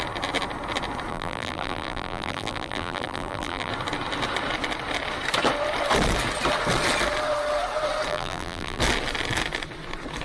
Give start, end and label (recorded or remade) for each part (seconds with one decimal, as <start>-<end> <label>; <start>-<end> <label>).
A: 0.0-1.1 recorded; 1.1-3.7 remade; 3.7-8.1 recorded; 8.1-8.8 remade; 8.8-10.2 recorded

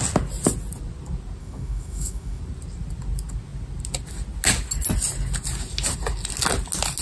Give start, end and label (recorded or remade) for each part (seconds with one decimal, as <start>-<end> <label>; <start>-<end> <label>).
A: 0.0-1.4 recorded; 1.4-2.4 remade; 2.4-7.0 recorded

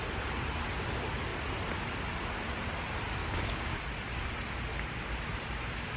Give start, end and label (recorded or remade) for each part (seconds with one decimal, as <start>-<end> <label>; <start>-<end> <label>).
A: 0.0-3.2 recorded; 3.2-3.8 remade; 3.8-6.0 recorded

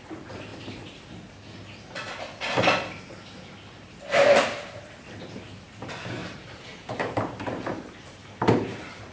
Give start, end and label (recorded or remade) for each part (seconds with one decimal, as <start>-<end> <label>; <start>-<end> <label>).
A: 0.0-6.2 recorded; 6.2-9.1 remade

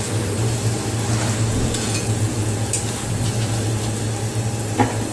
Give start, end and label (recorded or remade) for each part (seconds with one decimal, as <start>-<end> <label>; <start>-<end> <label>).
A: 0.0-1.5 recorded; 1.5-2.7 remade; 2.7-5.1 recorded

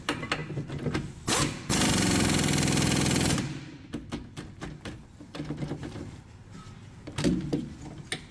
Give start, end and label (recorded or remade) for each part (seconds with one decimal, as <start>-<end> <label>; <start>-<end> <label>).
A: 0.0-5.8 recorded; 5.8-6.4 remade; 6.4-8.3 recorded

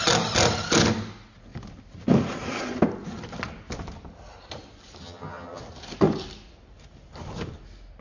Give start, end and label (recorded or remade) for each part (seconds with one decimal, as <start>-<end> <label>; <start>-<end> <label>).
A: 0.0-5.0 recorded; 5.0-5.6 remade; 5.6-8.0 recorded